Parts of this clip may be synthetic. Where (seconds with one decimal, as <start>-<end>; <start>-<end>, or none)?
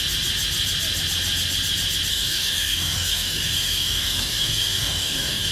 2.1-5.5